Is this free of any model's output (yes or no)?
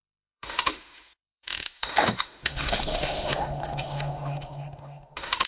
no